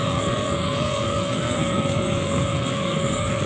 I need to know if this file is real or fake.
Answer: fake